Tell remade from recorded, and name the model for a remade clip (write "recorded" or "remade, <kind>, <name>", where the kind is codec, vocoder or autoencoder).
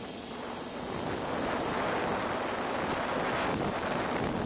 recorded